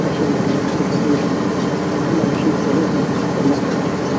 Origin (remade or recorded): recorded